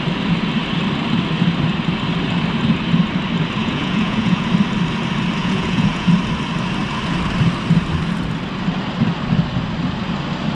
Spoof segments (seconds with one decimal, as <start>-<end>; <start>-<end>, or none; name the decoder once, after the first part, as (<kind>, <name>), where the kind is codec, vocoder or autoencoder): 3.6-4.5 (vocoder, Vocos); 5.4-6.1